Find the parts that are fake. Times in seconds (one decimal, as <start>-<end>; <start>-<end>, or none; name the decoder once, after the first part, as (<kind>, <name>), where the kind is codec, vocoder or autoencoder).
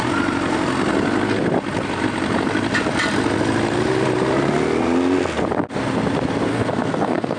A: 6.5-7.4 (codec, SNAC)